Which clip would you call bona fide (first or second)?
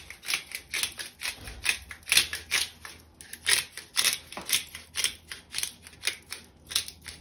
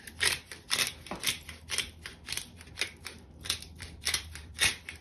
first